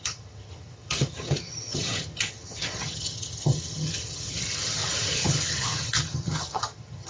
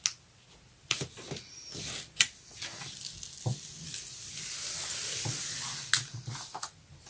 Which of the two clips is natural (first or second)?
second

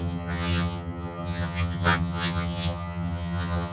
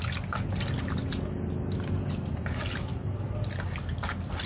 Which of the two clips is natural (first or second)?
second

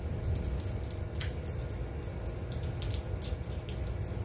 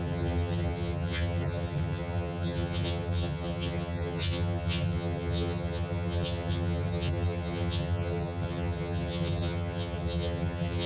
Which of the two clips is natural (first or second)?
first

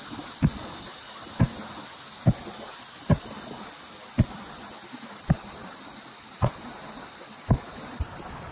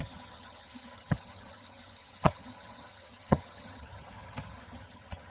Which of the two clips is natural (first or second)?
first